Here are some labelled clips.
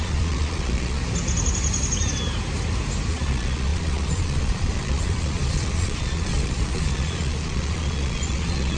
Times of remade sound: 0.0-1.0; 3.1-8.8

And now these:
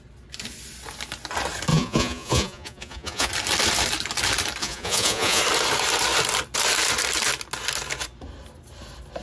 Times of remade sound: 1.7-3.3; 4.6-5.4

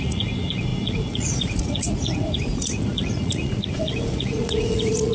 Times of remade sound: 0.0-5.1

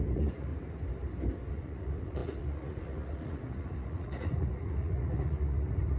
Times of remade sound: 0.0-0.5; 1.5-6.0

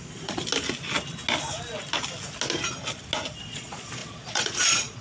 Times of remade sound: 0.0-0.4; 3.4-5.0

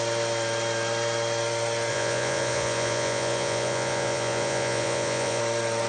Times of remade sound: 1.9-5.4

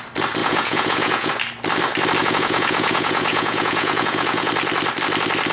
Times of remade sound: 0.4-1.3; 2.2-4.5